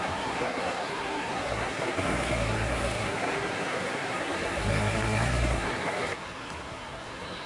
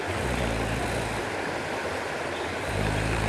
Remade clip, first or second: first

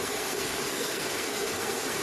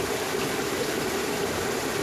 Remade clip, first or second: first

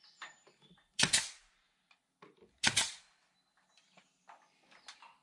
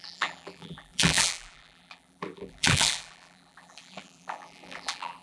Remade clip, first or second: second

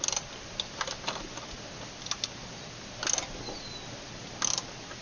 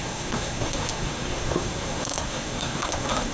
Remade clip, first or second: second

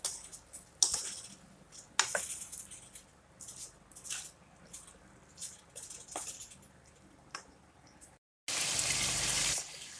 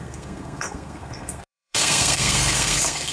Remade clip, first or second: second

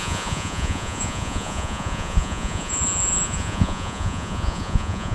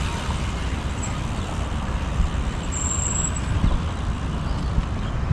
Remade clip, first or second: first